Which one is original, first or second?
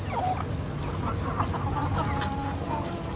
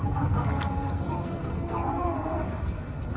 first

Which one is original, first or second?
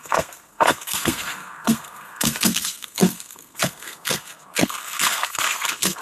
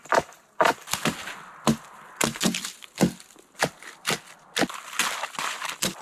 second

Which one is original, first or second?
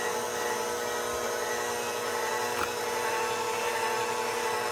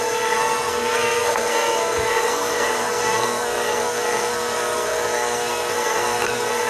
first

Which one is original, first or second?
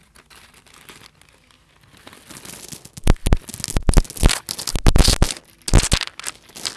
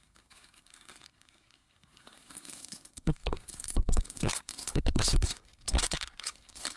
first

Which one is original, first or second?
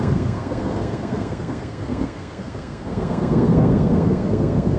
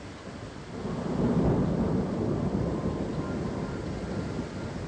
second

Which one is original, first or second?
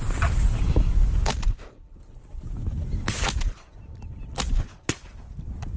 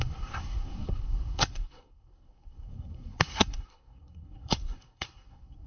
first